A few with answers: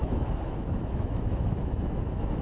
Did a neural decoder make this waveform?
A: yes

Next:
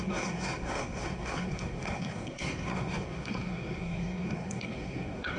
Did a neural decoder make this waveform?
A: yes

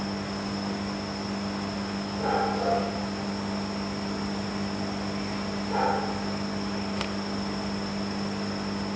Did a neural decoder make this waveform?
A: no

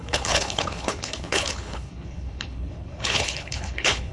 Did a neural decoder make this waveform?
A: yes